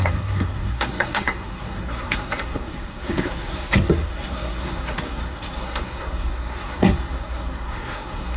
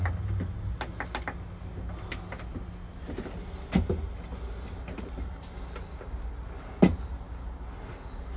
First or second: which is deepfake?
first